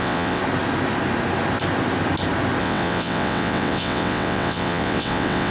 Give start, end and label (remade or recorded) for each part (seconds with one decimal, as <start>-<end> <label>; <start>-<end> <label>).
0.0-0.4 remade; 0.4-2.6 recorded; 2.6-5.5 remade